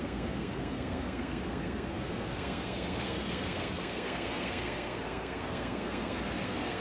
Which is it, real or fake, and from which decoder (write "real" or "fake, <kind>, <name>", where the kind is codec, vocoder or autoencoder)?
fake, codec, SNAC